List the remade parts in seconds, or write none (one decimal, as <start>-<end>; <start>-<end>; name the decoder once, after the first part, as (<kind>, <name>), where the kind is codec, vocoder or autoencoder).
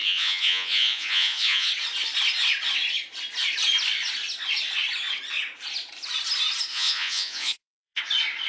0.0-1.7 (vocoder, Vocos); 6.7-8.0